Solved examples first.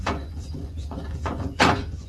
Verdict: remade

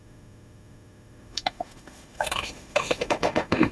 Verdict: remade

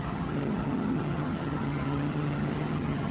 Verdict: remade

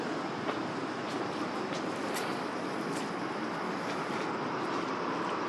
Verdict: recorded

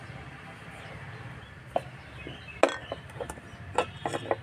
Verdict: recorded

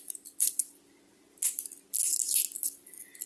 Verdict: recorded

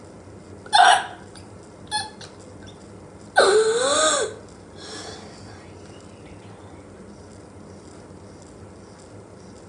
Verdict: recorded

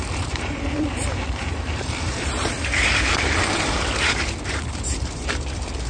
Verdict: remade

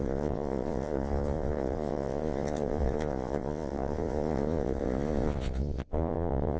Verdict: remade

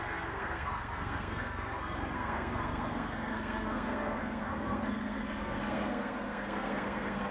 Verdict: remade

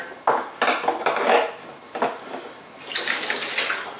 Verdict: recorded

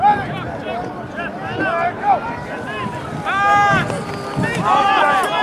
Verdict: recorded